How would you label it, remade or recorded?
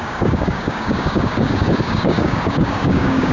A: remade